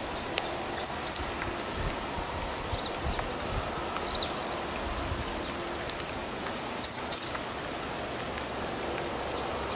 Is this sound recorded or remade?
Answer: recorded